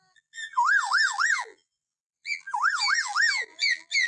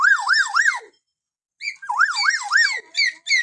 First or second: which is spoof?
first